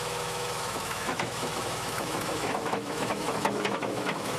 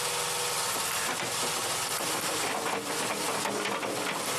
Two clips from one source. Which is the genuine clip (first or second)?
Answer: second